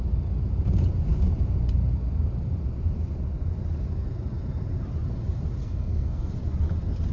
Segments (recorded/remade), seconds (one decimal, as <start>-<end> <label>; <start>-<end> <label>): 0.0-5.6 recorded; 5.6-6.3 remade; 6.3-7.1 recorded